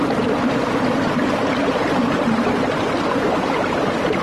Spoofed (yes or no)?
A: no